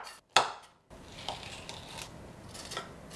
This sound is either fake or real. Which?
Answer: real